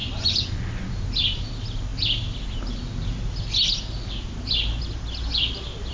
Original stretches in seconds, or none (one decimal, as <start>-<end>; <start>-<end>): 0.0-5.9